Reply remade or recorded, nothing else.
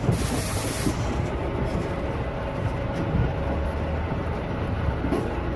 recorded